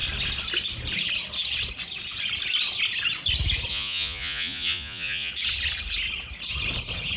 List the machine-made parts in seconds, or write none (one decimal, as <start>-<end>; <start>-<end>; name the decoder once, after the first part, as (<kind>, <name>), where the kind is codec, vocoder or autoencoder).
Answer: 3.7-5.3 (vocoder, Vocos)

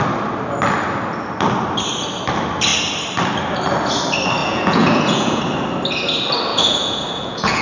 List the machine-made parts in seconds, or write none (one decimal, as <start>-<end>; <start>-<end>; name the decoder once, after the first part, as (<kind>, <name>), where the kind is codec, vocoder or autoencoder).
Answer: 4.4-5.4 (vocoder, Vocos); 6.5-7.6